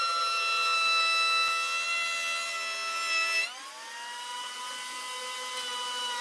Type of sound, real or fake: real